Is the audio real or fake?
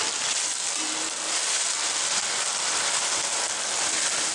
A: real